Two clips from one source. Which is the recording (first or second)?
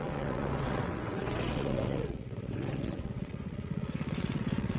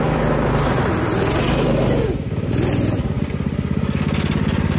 second